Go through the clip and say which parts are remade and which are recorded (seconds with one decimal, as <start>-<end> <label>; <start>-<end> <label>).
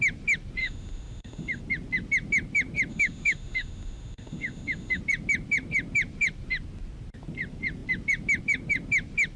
0.0-0.6 recorded; 0.6-1.6 remade; 1.6-2.9 recorded; 2.9-5.0 remade; 5.0-9.4 recorded